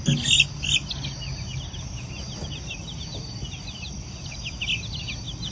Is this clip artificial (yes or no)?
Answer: no